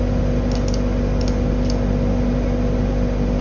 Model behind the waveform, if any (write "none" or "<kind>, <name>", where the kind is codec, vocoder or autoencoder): none